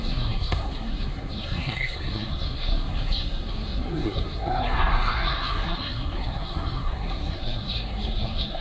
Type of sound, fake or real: fake